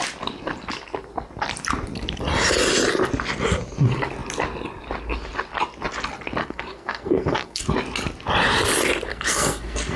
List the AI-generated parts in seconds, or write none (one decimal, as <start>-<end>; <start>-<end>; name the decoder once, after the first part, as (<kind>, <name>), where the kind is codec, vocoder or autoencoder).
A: 6.4-7.7 (codec, SNAC); 9.1-10.0